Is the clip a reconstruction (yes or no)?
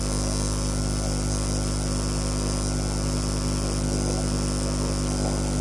no